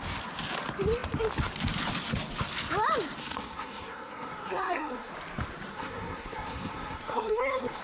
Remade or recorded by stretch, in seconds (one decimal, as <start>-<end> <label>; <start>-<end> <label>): 0.0-3.2 recorded; 3.2-5.1 remade; 5.1-5.7 recorded; 5.7-7.8 remade

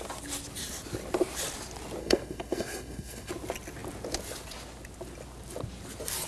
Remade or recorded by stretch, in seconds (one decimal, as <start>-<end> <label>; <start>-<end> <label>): 0.0-2.0 recorded; 2.0-3.3 remade; 3.3-6.3 recorded

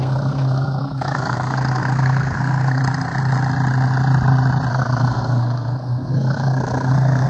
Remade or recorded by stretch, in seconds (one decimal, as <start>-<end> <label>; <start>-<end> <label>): 0.0-2.8 remade; 2.8-4.7 recorded; 4.7-7.3 remade

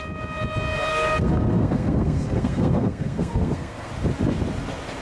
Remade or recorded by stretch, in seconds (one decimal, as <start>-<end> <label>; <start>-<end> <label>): 0.0-0.9 recorded; 0.9-3.9 remade; 3.9-5.0 recorded

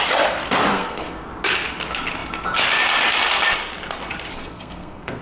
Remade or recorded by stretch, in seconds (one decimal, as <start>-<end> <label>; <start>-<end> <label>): 0.0-0.7 recorded; 0.7-1.3 remade; 1.3-4.5 recorded; 4.5-5.2 remade

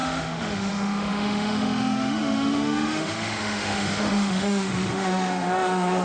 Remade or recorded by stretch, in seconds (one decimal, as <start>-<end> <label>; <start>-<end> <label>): 0.0-6.0 remade

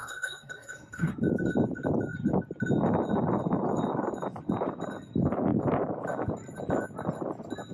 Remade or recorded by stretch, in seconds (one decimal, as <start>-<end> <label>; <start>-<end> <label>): 0.0-1.1 remade; 1.1-7.7 recorded